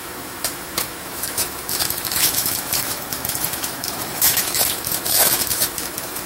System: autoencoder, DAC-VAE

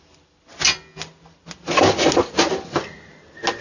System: none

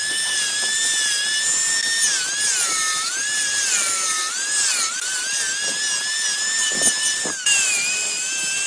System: none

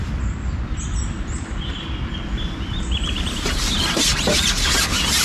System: none